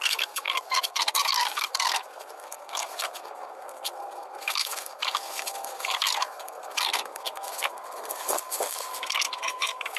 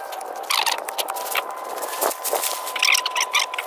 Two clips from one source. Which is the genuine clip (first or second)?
second